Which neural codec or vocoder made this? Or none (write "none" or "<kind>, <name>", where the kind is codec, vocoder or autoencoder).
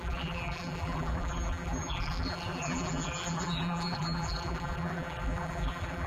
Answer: vocoder, BigVGAN v2